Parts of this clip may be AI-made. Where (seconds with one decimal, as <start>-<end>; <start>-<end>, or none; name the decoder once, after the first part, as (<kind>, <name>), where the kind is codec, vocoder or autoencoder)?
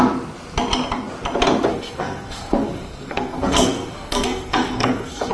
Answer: 1.7-5.3 (codec, SNAC)